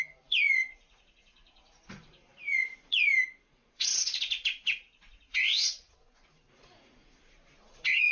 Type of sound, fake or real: fake